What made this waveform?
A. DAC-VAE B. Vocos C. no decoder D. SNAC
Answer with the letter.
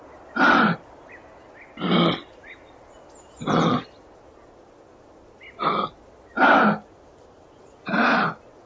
C